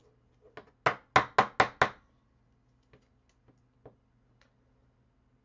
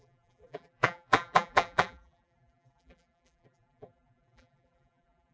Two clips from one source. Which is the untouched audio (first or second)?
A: first